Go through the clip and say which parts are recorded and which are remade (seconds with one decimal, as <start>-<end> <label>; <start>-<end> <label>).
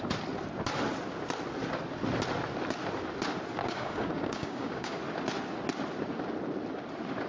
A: 0.0-3.6 recorded; 3.6-5.0 remade; 5.0-7.3 recorded